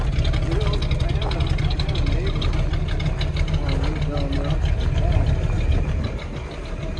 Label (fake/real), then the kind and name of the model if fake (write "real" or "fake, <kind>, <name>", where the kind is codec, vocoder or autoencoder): real